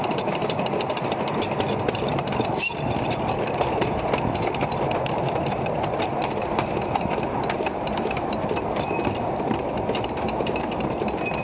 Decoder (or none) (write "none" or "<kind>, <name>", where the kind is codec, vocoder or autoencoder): none